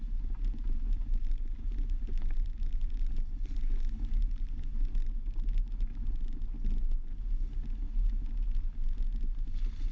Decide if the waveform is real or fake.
real